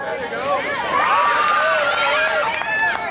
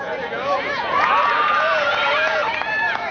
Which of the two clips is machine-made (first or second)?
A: second